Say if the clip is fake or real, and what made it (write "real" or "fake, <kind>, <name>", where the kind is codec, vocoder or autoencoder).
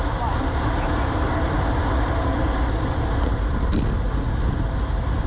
real